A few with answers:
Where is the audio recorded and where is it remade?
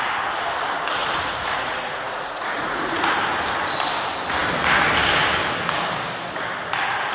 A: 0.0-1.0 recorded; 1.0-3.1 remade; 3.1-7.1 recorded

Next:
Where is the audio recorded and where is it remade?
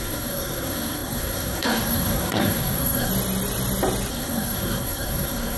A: 0.0-3.1 remade; 3.1-4.1 recorded; 4.1-5.6 remade